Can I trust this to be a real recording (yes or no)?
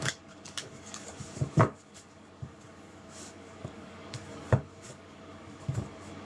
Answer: no